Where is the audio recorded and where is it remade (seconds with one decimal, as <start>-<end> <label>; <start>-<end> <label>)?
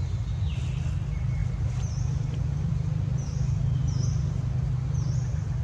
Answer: 0.0-1.4 recorded; 1.4-3.3 remade; 3.3-5.6 recorded